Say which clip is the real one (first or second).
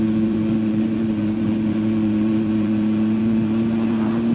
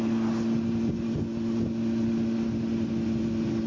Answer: second